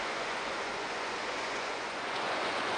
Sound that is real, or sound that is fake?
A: fake